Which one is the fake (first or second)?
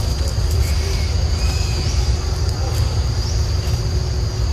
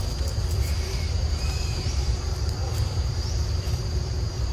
second